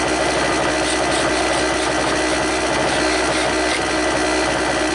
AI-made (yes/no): no